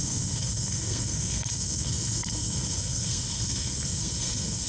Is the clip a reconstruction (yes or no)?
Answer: yes